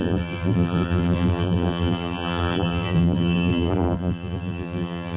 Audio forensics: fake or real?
fake